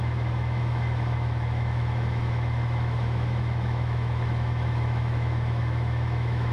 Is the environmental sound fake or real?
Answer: fake